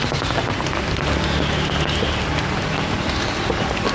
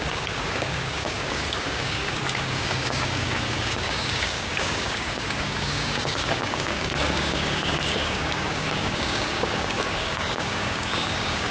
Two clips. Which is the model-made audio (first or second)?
second